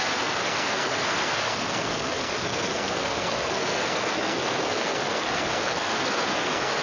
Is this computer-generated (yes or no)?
yes